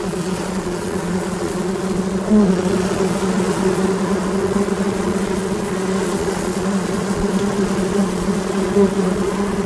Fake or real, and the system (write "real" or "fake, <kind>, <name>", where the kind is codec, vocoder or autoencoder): fake, vocoder, Vocos